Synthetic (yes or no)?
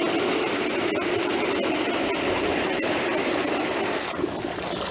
no